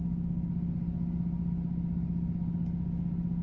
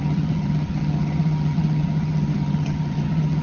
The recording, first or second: first